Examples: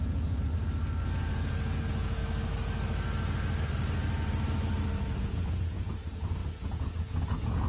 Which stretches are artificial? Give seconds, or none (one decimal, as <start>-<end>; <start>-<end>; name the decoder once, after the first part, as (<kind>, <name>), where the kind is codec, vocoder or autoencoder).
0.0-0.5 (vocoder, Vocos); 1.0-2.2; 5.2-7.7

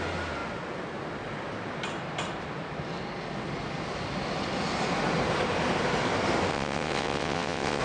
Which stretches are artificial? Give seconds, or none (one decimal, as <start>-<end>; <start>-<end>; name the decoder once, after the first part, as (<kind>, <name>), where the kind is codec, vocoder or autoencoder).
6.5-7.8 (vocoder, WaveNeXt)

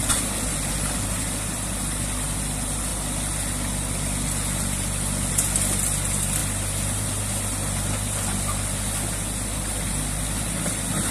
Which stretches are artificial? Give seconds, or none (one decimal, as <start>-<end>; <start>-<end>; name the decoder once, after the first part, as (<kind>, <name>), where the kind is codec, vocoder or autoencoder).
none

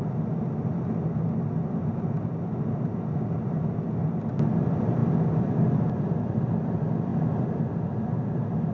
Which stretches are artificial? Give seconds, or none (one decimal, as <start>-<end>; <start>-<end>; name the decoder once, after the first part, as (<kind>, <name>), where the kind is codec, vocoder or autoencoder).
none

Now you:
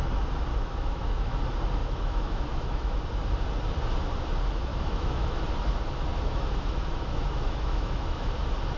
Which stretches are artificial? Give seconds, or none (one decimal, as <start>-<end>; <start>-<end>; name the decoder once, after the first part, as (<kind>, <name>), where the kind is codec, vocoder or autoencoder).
0.5-1.4 (autoencoder, DAC-VAE); 1.8-3.0; 4.7-5.4; 6.1-8.3

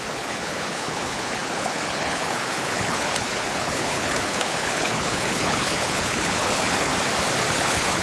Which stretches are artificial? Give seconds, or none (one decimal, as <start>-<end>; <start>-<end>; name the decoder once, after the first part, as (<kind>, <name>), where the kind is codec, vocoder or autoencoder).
0.0-6.9 (codec, HILCodec); 7.5-8.0

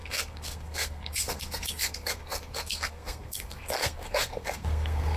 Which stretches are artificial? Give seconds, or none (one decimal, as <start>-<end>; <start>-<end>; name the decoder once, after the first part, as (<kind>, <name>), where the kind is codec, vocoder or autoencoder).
0.0-5.2 (codec, SNAC)